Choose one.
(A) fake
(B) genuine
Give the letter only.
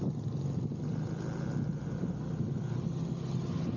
B